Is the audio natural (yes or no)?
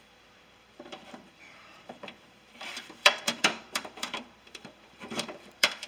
no